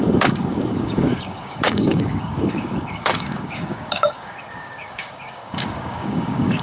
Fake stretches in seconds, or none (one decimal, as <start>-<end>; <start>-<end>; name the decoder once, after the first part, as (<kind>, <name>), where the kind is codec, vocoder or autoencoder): 0.0-6.6 (codec, DAC)